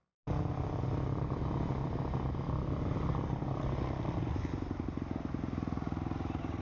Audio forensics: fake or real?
real